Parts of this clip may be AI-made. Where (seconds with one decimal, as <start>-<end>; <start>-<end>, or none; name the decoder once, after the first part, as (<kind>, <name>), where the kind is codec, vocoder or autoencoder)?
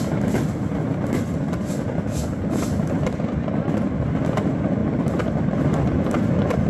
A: 4.8-5.4 (vocoder, BigVGAN v2)